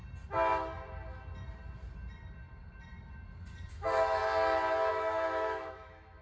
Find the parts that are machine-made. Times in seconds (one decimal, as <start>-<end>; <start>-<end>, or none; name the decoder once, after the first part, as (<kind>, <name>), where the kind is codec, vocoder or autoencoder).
3.7-4.2 (autoencoder, DAC-VAE); 4.9-6.2